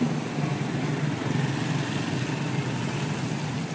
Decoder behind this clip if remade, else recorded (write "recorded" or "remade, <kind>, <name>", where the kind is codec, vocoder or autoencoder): recorded